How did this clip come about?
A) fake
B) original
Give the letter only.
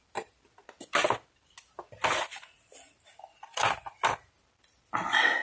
B